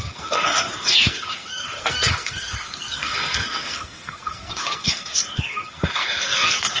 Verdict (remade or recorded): remade